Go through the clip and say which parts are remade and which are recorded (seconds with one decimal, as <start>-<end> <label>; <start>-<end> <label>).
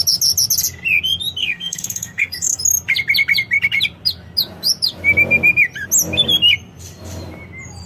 0.0-1.4 recorded; 1.4-2.6 remade; 2.6-7.9 recorded